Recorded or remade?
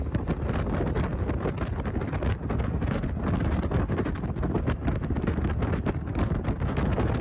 recorded